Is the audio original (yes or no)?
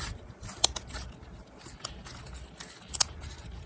yes